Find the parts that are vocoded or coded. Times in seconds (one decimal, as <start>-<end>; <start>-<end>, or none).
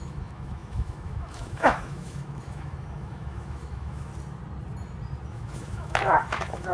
0.0-4.1; 5.3-6.7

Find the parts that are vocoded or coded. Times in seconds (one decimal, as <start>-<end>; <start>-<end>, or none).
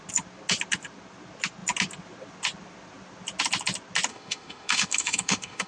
4.1-5.7